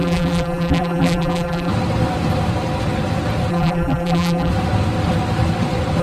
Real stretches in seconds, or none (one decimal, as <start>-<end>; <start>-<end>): 1.7-3.5; 4.5-6.0